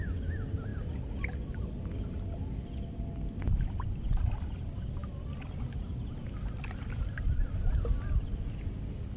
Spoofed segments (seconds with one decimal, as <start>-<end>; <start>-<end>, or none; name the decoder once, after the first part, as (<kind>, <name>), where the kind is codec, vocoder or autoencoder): none